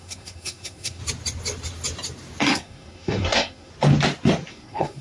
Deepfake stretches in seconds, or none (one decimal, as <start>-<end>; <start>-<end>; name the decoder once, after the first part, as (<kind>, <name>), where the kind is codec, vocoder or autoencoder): 0.0-1.0 (codec, SNAC); 2.4-3.7; 4.5-5.0